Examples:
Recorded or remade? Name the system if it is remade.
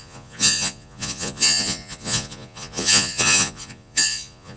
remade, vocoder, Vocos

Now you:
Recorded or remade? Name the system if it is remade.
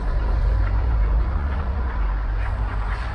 remade, vocoder, Vocos